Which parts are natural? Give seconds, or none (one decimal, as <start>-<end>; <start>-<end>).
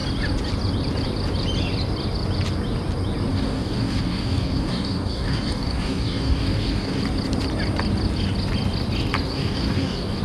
0.0-3.3; 7.0-9.3